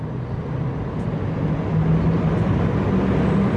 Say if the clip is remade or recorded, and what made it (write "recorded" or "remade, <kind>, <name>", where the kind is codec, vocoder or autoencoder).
recorded